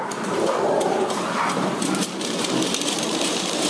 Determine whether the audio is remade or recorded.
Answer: remade